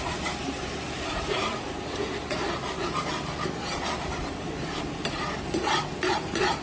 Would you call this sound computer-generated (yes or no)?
yes